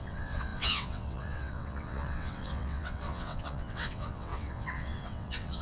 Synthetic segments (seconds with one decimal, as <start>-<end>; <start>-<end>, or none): 0.0-5.6